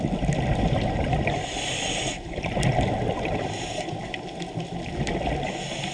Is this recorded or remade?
recorded